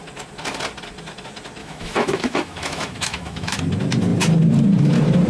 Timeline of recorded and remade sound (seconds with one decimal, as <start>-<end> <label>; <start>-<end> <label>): 0.0-1.6 recorded; 1.6-3.6 remade; 3.6-5.3 recorded